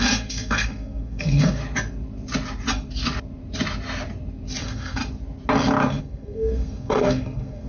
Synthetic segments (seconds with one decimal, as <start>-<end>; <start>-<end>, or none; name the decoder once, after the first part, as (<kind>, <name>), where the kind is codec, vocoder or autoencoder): 0.0-1.6 (codec, SNAC); 4.6-5.0; 6.0-7.7